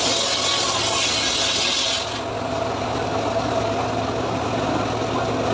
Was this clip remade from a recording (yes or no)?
no